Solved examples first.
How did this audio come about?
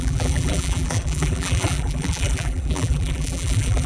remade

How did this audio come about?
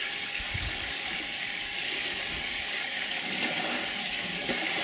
remade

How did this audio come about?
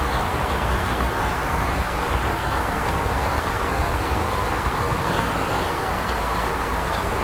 remade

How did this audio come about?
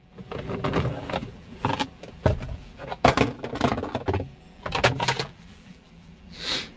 remade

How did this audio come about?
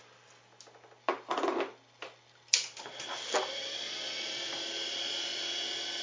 recorded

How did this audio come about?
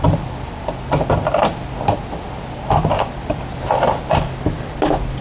recorded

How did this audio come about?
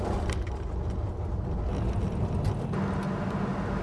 recorded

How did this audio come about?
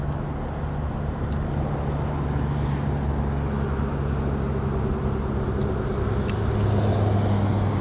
recorded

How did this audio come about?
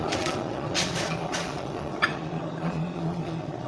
remade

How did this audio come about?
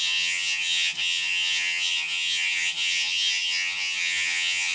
remade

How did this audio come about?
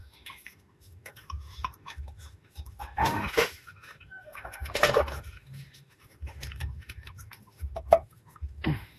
remade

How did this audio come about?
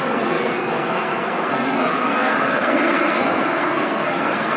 remade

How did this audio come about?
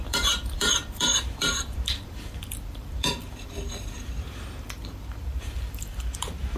remade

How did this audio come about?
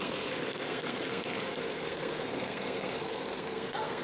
remade